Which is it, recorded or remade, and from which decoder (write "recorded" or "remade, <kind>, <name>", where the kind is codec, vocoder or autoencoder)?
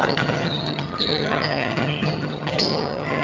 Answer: remade, vocoder, HiFi-GAN